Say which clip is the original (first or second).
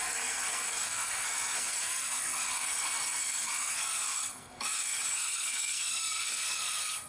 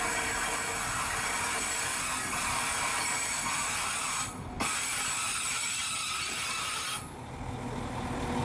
second